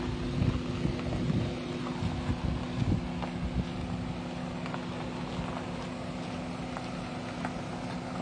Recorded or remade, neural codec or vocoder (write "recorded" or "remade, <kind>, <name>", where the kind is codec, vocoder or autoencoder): recorded